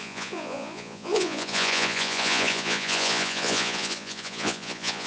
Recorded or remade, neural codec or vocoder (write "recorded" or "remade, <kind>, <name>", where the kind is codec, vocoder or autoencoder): remade, vocoder, Vocos